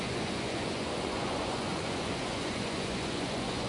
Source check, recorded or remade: remade